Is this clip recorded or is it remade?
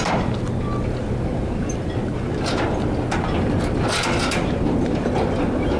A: recorded